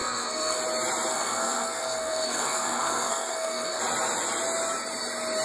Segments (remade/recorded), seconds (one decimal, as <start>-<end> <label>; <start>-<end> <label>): 0.0-0.6 remade; 0.6-1.1 recorded; 1.1-3.8 remade; 3.8-5.4 recorded

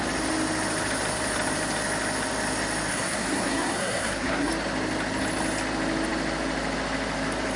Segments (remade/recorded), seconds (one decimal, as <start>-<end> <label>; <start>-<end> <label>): 0.0-2.9 recorded; 2.9-4.5 remade; 4.5-7.6 recorded

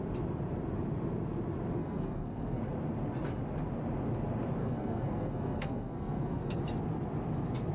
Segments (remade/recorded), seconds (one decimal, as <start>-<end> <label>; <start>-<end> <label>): 0.0-1.8 recorded; 1.8-2.6 remade; 2.6-4.6 recorded; 4.6-6.6 remade; 6.6-7.7 recorded